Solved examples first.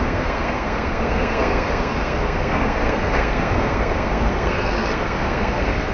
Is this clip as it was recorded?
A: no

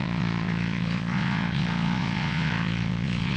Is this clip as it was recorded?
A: no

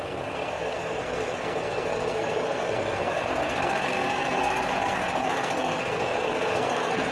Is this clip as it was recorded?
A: no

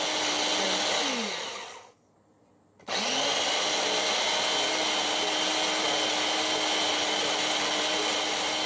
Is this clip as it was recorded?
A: yes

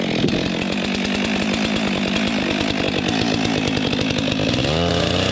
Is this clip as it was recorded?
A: yes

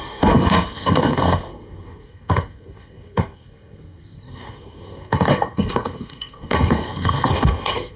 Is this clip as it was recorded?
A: no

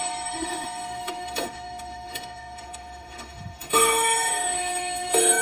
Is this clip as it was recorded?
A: no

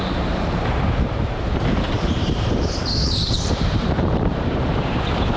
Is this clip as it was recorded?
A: no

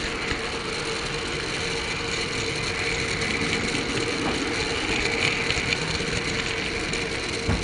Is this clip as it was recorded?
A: yes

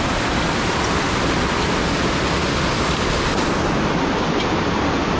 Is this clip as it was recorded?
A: yes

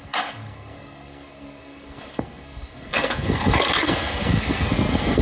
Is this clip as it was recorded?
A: no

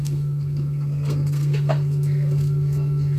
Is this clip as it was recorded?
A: no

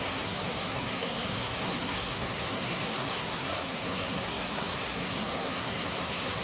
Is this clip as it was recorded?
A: no